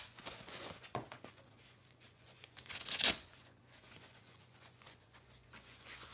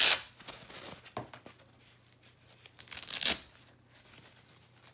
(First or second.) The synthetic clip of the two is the first